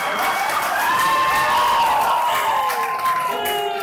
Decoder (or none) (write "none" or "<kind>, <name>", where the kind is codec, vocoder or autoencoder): none